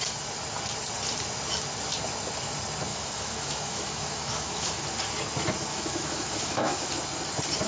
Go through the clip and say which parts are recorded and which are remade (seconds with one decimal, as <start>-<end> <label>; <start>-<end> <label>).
0.0-2.9 recorded; 2.9-4.8 remade; 4.8-5.7 recorded; 5.7-6.9 remade; 6.9-7.7 recorded